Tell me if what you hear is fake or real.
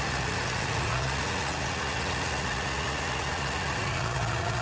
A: fake